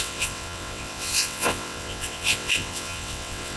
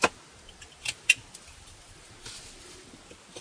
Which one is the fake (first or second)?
first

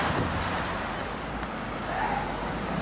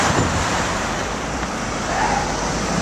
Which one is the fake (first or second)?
second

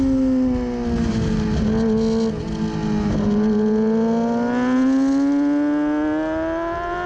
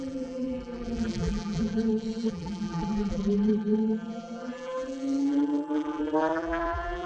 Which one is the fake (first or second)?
second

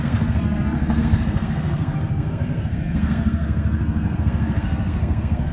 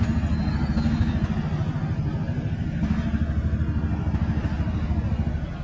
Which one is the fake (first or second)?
first